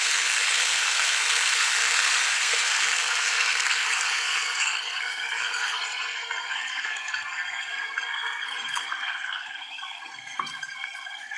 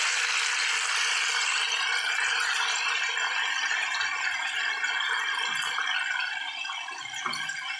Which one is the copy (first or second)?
first